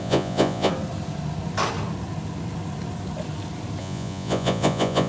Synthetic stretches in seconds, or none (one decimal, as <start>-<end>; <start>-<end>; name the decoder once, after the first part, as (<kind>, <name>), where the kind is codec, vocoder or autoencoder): 0.0-0.7 (vocoder, Vocos); 3.8-5.1